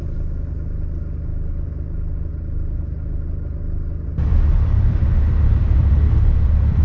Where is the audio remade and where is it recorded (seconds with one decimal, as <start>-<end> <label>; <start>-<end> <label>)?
0.0-1.3 recorded; 1.3-2.8 remade; 2.8-4.3 recorded; 4.3-6.8 remade